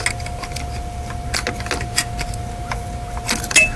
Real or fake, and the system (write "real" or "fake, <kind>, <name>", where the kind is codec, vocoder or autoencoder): real